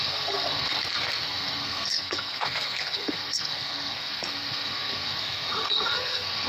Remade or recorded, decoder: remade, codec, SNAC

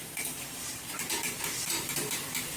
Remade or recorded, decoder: remade, vocoder, BigVGAN v2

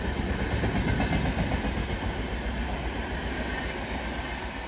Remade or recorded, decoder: recorded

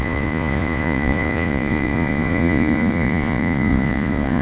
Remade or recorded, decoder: remade, vocoder, Vocos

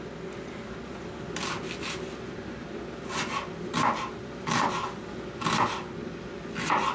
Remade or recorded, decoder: recorded